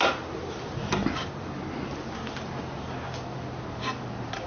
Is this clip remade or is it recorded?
recorded